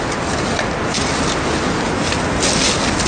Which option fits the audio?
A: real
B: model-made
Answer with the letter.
A